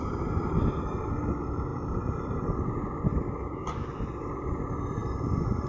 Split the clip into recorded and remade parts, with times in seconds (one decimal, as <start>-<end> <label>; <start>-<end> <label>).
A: 0.0-5.7 recorded